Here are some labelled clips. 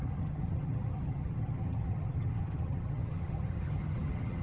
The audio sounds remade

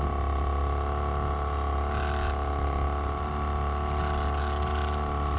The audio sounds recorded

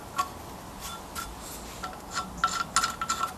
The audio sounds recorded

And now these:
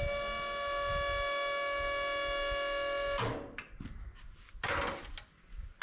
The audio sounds recorded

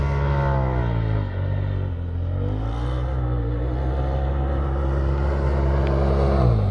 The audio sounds recorded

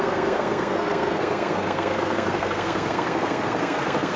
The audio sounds remade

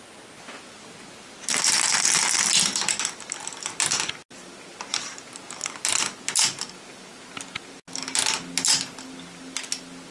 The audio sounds recorded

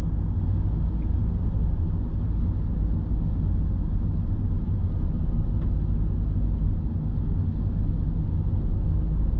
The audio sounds recorded